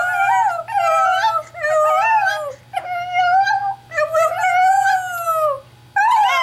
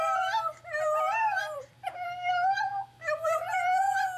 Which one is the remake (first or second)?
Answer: second